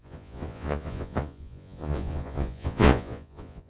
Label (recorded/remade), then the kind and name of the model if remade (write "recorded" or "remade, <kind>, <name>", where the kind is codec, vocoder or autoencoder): remade, vocoder, Vocos